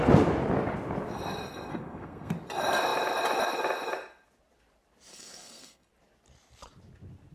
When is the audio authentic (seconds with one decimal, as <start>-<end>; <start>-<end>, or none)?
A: 0.0-1.7; 2.3-5.1; 5.9-7.3